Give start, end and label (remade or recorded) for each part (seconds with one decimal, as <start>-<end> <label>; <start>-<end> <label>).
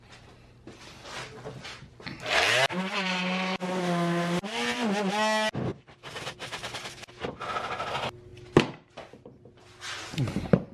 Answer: 0.0-5.7 recorded; 5.7-7.1 remade; 7.1-10.7 recorded